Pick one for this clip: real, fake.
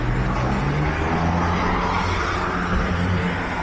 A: real